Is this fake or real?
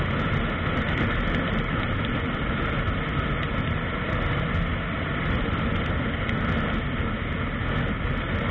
real